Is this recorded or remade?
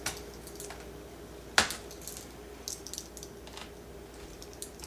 recorded